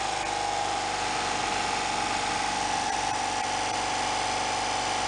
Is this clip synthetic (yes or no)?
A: no